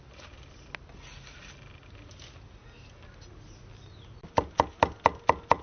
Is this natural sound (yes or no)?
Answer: yes